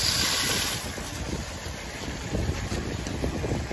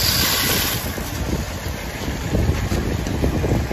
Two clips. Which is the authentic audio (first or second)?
second